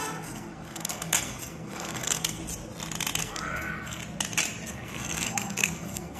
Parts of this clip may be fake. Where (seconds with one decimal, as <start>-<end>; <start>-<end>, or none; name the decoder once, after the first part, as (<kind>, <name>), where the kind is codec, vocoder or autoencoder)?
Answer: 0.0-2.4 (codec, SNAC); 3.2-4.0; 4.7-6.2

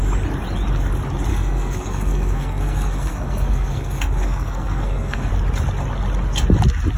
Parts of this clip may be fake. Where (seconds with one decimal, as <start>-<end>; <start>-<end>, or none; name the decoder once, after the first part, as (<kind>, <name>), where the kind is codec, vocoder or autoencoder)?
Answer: 1.3-5.3 (codec, SNAC)

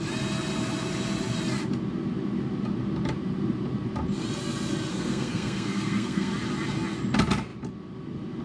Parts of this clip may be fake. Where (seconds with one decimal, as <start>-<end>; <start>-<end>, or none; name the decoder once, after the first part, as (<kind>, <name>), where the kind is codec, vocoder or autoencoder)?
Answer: 4.9-6.3 (codec, SNAC)